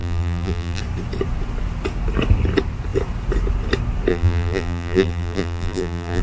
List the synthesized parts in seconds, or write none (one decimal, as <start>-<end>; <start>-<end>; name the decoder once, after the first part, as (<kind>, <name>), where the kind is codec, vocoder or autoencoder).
0.0-0.8 (vocoder, BigVGAN v2); 4.1-6.2